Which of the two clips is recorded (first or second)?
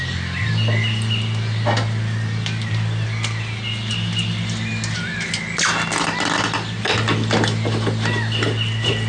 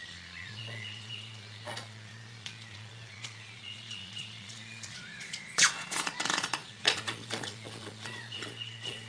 first